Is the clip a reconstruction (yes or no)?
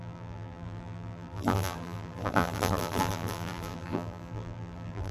yes